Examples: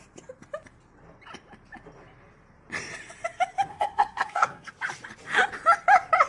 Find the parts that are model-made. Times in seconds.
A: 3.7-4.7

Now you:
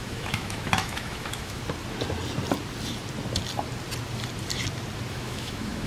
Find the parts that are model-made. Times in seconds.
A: 0.0-1.6; 5.1-5.9

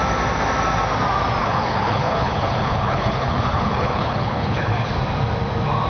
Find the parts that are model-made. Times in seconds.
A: 1.4-4.9